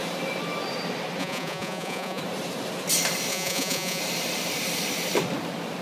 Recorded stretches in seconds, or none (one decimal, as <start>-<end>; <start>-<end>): 0.0-1.2; 2.2-3.3; 4.0-5.8